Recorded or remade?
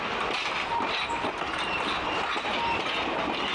recorded